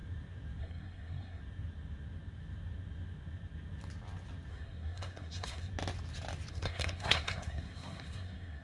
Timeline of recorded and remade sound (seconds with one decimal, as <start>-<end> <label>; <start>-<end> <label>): 0.0-0.6 recorded; 0.6-1.4 remade; 1.4-4.5 recorded; 4.5-5.7 remade; 5.7-6.5 recorded; 6.5-8.6 remade